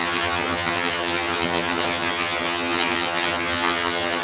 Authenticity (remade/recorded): remade